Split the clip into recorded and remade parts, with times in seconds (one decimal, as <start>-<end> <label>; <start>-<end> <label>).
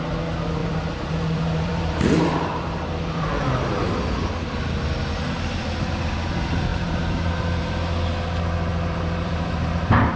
0.0-0.6 recorded; 0.6-4.3 remade; 4.3-6.7 recorded; 6.7-7.6 remade; 7.6-8.7 recorded; 8.7-10.2 remade